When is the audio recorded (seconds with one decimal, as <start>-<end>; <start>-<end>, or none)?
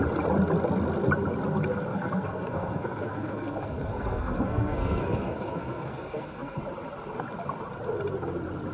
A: 0.0-1.9; 6.6-8.7